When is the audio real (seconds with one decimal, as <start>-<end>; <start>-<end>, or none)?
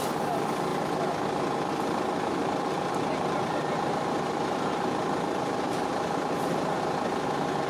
0.0-7.7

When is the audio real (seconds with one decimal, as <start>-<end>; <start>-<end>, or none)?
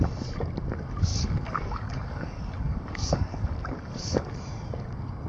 0.0-1.1; 4.3-5.3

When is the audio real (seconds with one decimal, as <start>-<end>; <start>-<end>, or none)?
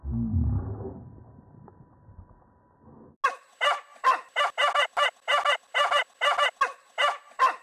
0.0-7.6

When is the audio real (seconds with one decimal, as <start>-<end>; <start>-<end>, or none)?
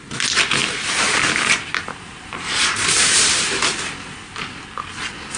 0.0-0.6; 3.8-5.4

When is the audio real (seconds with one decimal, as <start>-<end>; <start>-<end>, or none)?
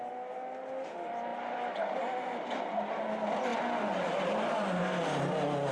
0.0-5.7